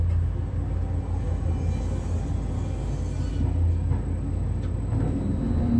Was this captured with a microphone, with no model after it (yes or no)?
yes